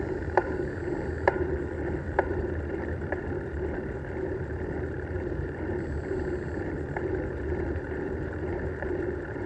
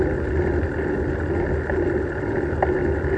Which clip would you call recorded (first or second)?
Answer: second